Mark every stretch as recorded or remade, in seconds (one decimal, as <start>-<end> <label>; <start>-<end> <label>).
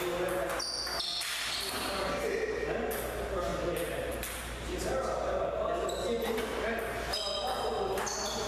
0.0-8.5 recorded